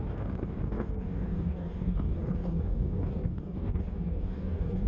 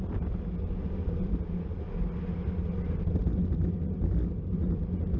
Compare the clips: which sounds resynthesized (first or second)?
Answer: first